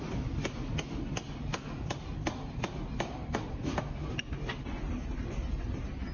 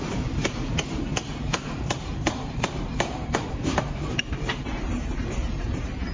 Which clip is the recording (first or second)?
first